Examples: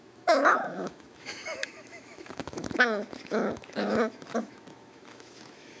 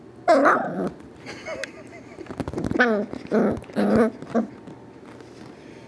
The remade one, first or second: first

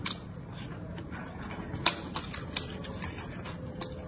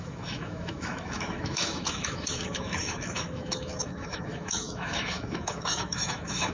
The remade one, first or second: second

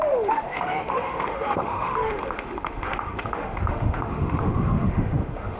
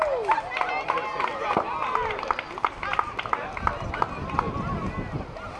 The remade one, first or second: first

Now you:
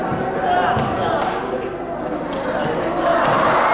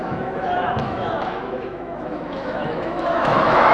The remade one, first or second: second